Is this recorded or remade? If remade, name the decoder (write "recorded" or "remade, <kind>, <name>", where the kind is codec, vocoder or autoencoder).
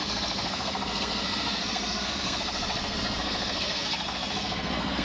remade, codec, SNAC